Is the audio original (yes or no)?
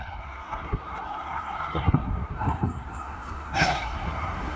no